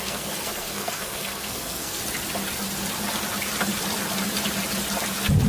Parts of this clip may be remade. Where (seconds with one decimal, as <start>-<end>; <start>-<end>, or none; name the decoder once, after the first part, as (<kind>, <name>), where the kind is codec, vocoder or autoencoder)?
0.0-2.0 (codec, SNAC)